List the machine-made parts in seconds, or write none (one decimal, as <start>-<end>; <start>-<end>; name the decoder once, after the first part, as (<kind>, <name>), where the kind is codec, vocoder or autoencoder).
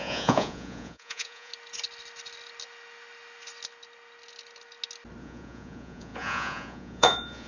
0.0-1.5 (vocoder, Vocos); 5.2-7.5